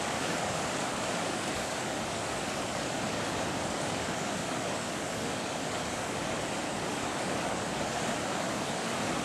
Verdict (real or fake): fake